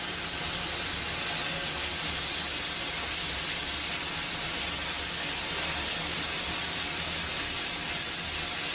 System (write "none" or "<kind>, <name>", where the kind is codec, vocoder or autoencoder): none